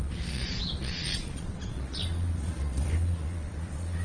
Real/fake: fake